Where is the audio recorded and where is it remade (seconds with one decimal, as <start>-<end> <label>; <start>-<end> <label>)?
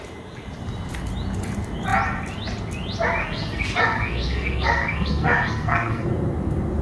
0.0-3.2 recorded; 3.2-6.1 remade; 6.1-6.8 recorded